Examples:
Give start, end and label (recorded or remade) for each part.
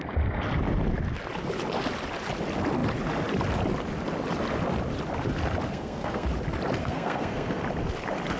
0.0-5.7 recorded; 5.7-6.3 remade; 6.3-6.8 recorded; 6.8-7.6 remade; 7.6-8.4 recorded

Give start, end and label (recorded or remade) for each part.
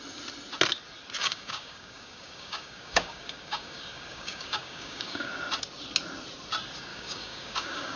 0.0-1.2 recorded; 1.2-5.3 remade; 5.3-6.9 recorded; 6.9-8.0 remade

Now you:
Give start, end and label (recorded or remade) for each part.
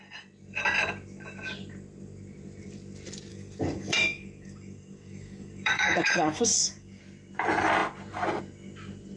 0.0-3.3 recorded; 3.3-7.0 remade; 7.0-9.2 recorded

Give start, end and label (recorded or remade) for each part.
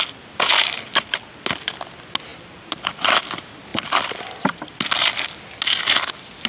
0.0-6.5 recorded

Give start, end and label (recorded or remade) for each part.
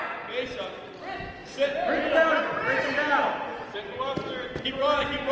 0.0-5.3 recorded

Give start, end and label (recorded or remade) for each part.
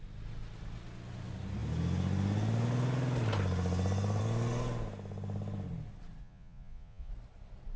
0.0-6.2 recorded; 6.2-7.1 remade; 7.1-7.8 recorded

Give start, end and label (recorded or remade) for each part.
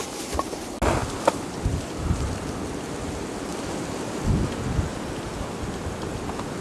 0.0-1.0 recorded; 1.0-2.6 remade; 2.6-3.5 recorded; 3.5-4.3 remade; 4.3-4.9 recorded; 4.9-5.6 remade; 5.6-6.6 recorded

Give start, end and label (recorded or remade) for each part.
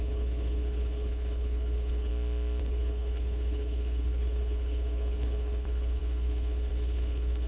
0.0-2.1 remade; 2.1-2.6 recorded; 2.6-7.5 remade